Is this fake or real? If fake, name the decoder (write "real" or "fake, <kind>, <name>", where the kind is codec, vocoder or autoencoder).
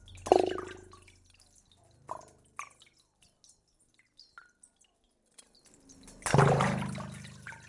real